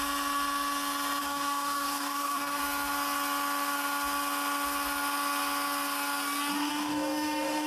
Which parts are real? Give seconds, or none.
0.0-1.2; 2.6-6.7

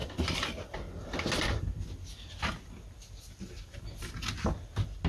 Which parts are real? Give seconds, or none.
0.0-5.1